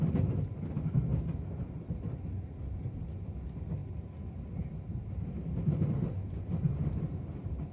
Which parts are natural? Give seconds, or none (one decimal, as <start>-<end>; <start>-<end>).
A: 0.0-7.7